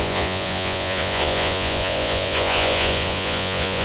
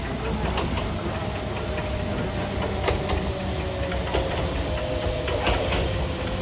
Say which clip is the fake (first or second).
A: first